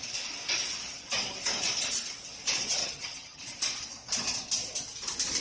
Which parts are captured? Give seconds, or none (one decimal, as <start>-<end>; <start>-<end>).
0.0-2.8; 3.4-5.4